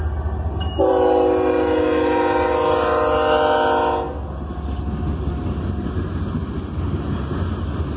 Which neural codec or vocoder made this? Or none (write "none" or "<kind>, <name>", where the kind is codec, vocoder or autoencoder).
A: none